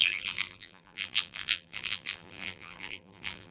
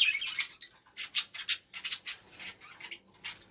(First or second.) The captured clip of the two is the second